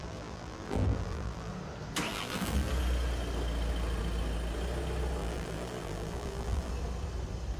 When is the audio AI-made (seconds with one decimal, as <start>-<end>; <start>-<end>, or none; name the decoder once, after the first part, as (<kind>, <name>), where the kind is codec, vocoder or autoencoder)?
0.0-1.5 (vocoder, BigVGAN v2); 2.1-2.7; 5.2-6.7